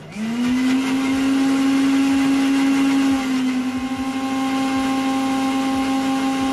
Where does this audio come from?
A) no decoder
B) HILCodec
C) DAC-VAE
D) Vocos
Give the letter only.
A